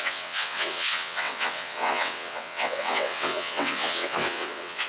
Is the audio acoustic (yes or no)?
no